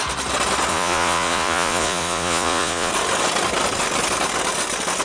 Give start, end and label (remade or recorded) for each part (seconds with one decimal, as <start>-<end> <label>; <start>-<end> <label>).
0.0-0.7 recorded; 0.7-2.9 remade; 2.9-5.0 recorded